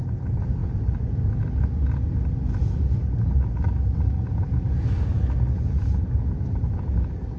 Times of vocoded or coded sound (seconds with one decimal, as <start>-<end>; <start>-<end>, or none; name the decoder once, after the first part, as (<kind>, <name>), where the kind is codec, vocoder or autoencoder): none